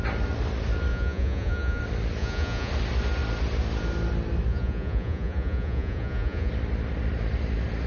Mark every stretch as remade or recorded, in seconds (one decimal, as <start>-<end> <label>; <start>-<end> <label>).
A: 0.0-0.9 recorded; 0.9-1.8 remade; 1.8-2.2 recorded; 2.2-2.7 remade; 2.7-4.5 recorded; 4.5-6.5 remade; 6.5-7.9 recorded